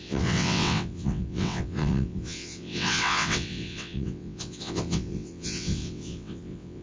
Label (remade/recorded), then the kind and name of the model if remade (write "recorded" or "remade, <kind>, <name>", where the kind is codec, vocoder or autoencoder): remade, vocoder, WaveNeXt